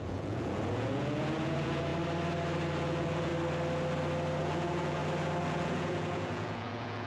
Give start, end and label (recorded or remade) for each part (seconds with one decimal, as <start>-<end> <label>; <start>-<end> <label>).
0.0-1.9 remade; 1.9-2.8 recorded; 2.8-3.3 remade; 3.3-4.4 recorded; 4.4-5.0 remade; 5.0-5.5 recorded; 5.5-7.1 remade